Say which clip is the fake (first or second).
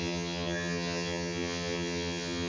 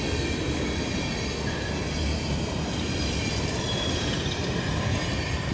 first